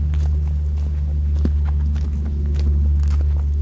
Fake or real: real